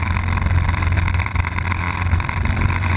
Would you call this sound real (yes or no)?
no